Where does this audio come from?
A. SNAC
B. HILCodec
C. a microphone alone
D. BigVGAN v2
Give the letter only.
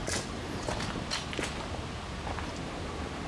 C